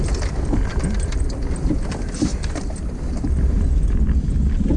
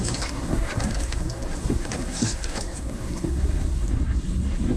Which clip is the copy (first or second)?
second